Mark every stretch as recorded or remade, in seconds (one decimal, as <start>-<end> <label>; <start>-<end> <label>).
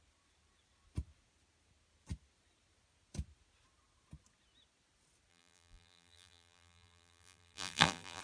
0.0-5.3 recorded; 5.3-8.2 remade